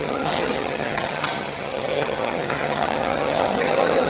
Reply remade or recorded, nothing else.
remade